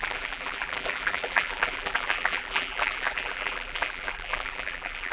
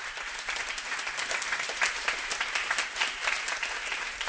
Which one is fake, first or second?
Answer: first